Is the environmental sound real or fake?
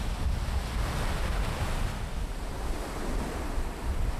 real